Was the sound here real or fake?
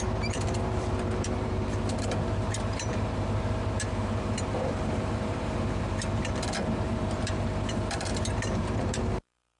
fake